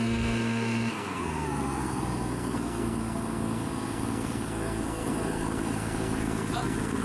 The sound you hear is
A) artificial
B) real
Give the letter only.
A